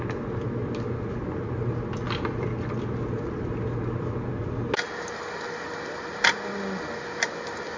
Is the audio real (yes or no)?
yes